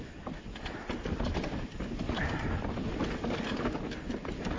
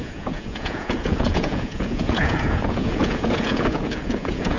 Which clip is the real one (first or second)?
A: first